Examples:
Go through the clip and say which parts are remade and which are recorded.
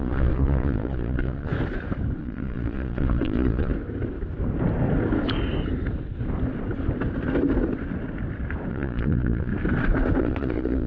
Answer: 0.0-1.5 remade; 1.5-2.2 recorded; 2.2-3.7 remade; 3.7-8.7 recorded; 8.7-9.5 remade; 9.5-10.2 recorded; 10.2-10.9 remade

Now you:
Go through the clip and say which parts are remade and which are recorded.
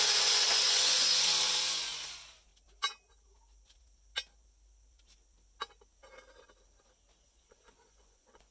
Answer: 0.0-2.5 remade; 2.5-7.2 recorded; 7.2-8.5 remade